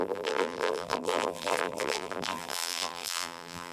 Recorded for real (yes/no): no